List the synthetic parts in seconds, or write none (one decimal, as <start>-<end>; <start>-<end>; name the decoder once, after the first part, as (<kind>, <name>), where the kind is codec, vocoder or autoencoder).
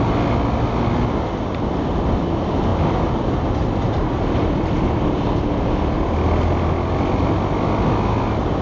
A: none